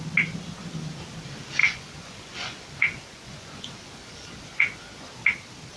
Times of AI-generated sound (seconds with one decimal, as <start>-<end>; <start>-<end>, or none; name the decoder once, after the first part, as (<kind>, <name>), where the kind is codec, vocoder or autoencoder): 1.6-5.1 (vocoder, Vocos)

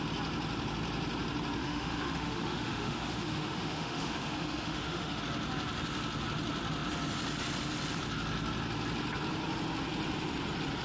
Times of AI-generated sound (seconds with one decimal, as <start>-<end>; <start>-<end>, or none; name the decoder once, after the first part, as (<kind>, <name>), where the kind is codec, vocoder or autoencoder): 1.6-5.2 (autoencoder, DAC-VAE)

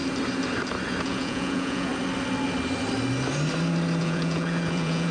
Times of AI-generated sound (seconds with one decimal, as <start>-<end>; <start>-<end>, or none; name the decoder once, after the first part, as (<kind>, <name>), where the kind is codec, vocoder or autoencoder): 1.0-1.9 (vocoder, Vocos); 4.0-5.1

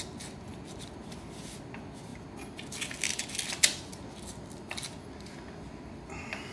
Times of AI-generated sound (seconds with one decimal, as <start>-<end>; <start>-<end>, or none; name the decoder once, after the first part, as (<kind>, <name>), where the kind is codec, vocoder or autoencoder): none